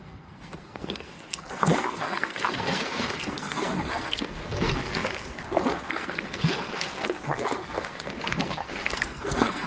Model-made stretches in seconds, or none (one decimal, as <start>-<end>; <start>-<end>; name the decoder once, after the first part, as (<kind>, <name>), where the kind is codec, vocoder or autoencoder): 0.0-9.7 (codec, SNAC)